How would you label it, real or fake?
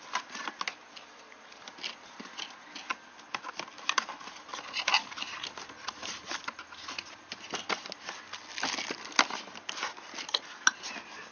real